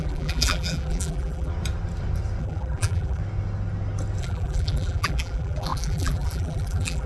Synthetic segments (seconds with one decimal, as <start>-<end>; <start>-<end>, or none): 0.0-1.5; 2.4-3.2; 4.2-7.1